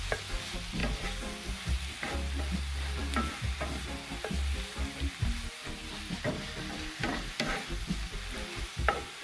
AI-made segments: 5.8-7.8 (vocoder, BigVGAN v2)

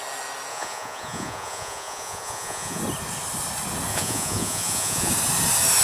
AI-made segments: 0.5-2.8 (vocoder, Vocos); 3.9-5.1

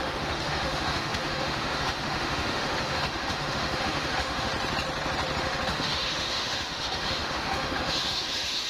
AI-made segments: 0.0-4.5 (autoencoder, DAC-VAE); 5.4-8.7